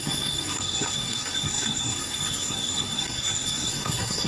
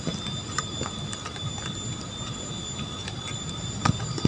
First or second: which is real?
second